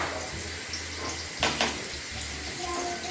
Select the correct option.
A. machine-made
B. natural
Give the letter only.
B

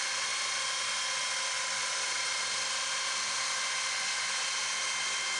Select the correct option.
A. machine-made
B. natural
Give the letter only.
B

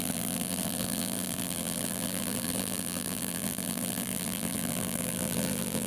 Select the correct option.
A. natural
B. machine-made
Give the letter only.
B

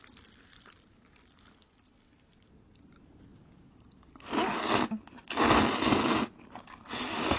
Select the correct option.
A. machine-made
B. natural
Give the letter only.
B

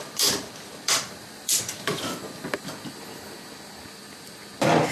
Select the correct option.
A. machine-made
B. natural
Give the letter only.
A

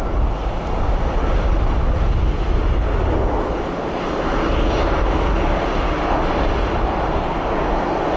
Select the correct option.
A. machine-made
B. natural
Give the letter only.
B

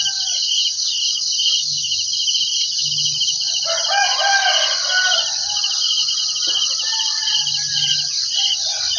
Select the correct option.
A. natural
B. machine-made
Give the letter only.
A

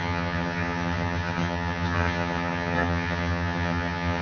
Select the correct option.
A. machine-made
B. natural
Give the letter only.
A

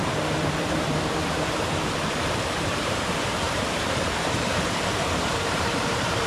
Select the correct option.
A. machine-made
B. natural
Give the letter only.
A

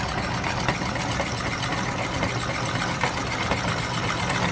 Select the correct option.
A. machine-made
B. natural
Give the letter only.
B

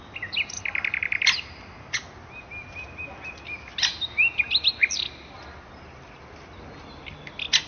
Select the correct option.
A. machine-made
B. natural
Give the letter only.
B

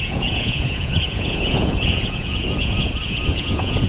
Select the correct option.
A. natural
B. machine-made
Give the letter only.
B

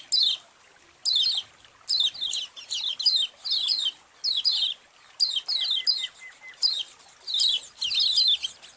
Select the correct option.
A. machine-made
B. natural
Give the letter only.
B